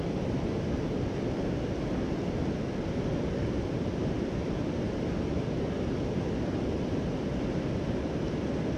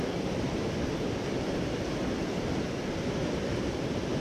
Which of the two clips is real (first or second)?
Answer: first